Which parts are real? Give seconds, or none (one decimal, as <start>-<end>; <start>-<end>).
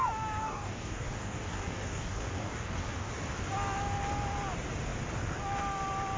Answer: 0.0-0.4; 3.1-6.2